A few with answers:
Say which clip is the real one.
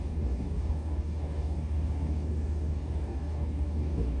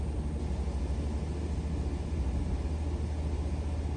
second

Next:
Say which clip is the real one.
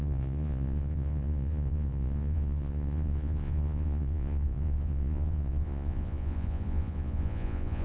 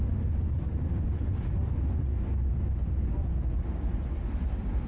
second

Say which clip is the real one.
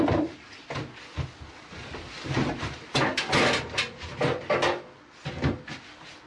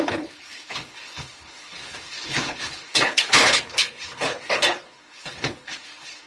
first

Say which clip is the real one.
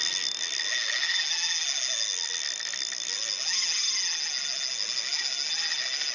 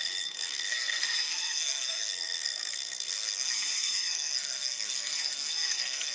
first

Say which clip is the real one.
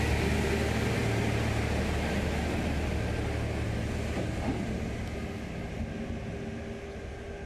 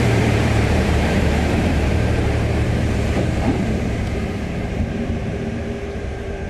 first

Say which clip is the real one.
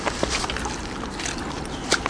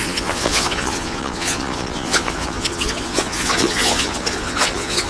first